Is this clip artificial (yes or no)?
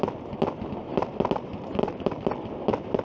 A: no